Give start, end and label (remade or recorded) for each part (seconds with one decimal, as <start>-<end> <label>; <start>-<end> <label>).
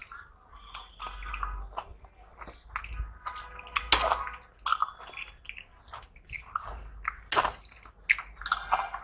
0.0-9.0 recorded